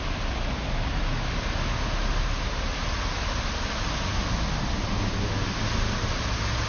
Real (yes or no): yes